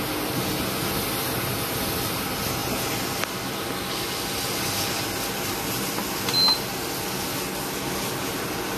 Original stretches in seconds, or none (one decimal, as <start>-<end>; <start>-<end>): 0.0-8.8